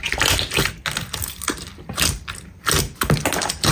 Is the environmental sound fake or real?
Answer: real